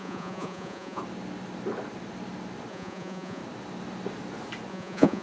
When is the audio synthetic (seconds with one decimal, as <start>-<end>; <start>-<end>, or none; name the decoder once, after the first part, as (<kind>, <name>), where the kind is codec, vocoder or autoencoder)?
0.0-1.0 (vocoder, Vocos); 2.7-3.4; 4.7-5.2

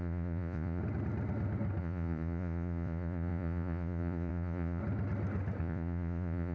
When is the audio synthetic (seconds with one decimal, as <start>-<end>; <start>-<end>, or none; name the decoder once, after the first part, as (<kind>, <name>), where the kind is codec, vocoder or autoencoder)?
0.0-0.8 (vocoder, Vocos); 1.8-4.8; 5.6-6.5

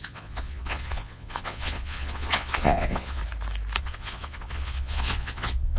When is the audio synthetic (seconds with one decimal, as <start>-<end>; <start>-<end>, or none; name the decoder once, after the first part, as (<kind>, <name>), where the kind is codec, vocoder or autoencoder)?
0.0-3.2 (vocoder, Vocos); 3.8-5.8